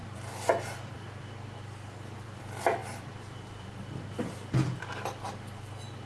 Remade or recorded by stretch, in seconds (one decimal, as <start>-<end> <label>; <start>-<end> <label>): 0.0-2.4 remade; 2.4-2.8 recorded; 2.8-4.8 remade; 4.8-6.1 recorded